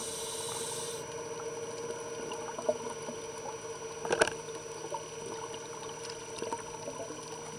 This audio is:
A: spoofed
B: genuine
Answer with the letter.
B